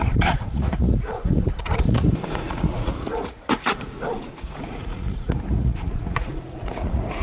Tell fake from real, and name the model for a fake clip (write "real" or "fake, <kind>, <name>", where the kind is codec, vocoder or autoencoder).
fake, vocoder, Vocos